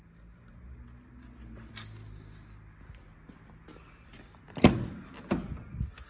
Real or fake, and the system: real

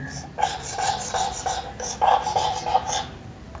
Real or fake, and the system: fake, vocoder, BigVGAN v2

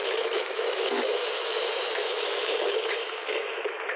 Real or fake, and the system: fake, autoencoder, DAC-VAE